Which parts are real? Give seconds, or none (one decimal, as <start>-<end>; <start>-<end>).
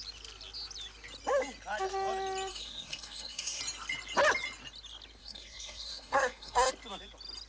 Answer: 0.0-2.5; 3.6-5.2; 6.7-7.5